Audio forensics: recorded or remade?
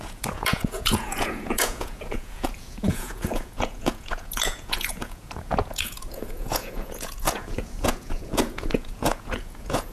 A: remade